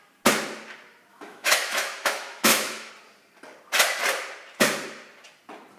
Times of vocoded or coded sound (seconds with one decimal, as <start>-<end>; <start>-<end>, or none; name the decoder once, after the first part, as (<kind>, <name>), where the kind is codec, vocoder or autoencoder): 1.1-2.9 (autoencoder, DAC-VAE)